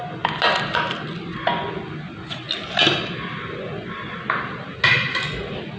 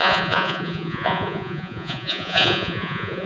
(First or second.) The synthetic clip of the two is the second